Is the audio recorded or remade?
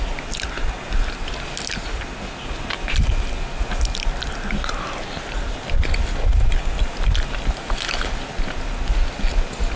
recorded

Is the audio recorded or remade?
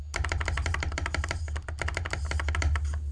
recorded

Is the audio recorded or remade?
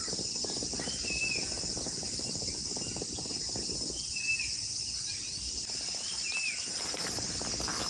recorded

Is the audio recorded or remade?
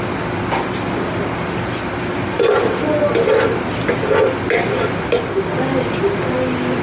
recorded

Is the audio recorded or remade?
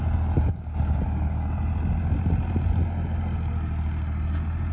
recorded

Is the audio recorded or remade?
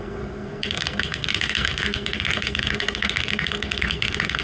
remade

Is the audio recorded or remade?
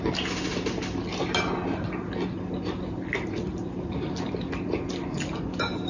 recorded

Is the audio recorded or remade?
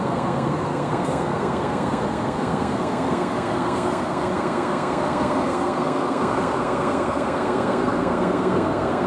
remade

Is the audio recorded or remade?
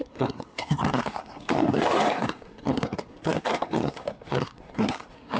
remade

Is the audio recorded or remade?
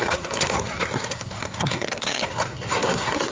remade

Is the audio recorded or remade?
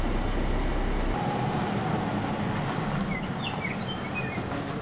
recorded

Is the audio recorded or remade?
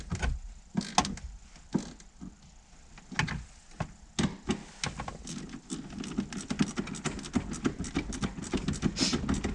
recorded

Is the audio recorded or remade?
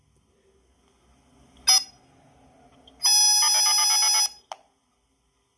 recorded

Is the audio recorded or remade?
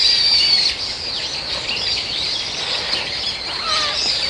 recorded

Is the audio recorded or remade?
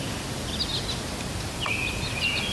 recorded